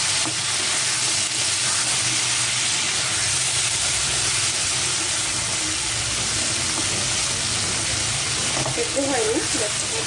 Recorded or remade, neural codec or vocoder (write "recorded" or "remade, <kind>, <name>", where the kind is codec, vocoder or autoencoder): recorded